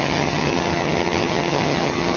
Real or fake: fake